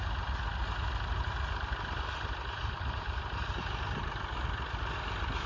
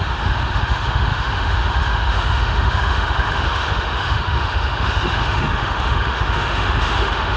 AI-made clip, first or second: second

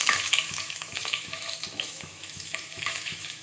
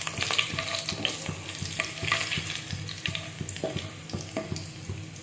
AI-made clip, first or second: first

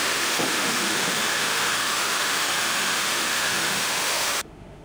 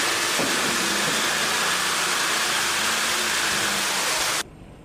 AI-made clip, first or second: first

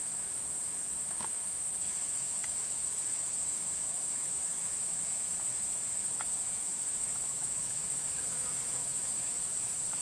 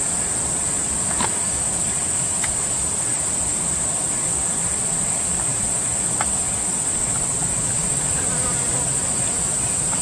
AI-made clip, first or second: first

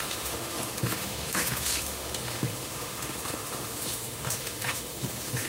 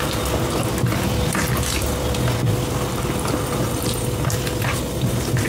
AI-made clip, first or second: first